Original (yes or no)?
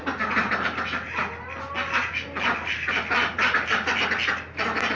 yes